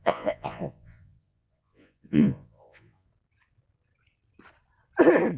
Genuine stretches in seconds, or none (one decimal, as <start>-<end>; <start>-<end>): 3.1-5.4